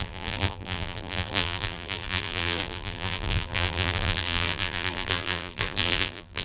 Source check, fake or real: fake